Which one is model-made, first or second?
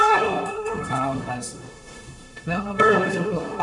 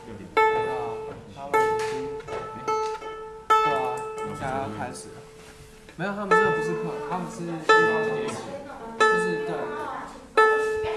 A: first